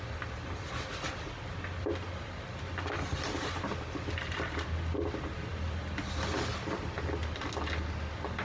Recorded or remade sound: recorded